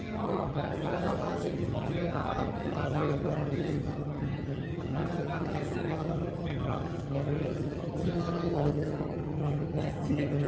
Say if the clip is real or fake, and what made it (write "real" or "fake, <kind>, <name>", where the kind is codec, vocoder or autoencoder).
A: fake, vocoder, HiFi-GAN